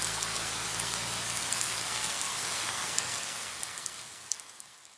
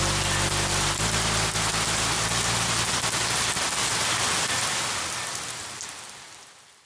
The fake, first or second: first